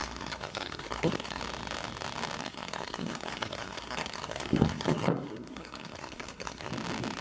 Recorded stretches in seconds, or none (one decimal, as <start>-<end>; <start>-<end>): 1.4-2.4; 6.7-7.2